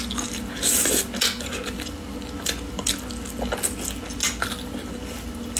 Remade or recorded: recorded